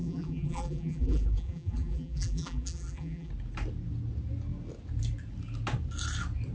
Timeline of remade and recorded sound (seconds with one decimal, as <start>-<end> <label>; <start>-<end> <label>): 0.0-3.3 remade; 3.3-6.5 recorded